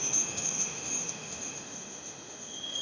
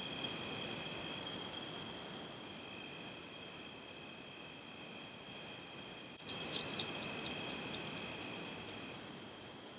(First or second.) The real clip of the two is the second